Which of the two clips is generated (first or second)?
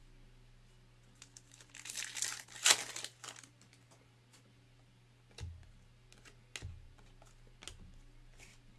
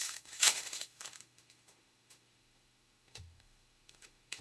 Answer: second